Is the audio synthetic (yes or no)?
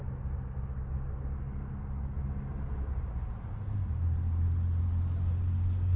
no